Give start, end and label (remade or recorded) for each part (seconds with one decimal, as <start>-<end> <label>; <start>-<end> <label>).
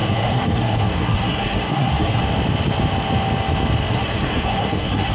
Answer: 0.0-2.2 remade; 2.2-3.9 recorded; 3.9-5.1 remade